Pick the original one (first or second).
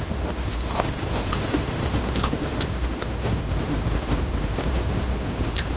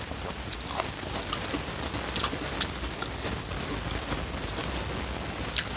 second